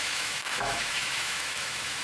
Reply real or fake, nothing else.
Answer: fake